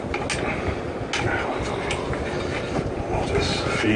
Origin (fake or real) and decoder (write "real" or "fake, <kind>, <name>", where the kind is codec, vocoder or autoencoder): real